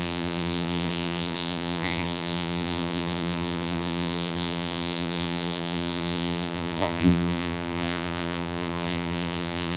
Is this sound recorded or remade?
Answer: remade